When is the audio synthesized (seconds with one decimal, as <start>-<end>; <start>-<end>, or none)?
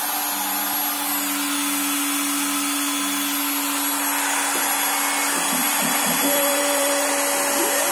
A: 5.6-7.1